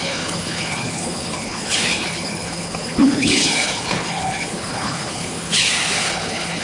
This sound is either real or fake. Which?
fake